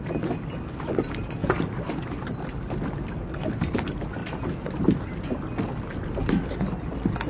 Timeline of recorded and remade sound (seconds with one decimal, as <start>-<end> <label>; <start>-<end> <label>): 0.0-7.3 recorded